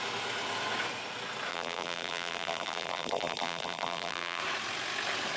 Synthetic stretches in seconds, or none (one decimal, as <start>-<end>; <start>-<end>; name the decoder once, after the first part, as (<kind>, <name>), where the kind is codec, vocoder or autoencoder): 1.5-4.4 (vocoder, BigVGAN v2)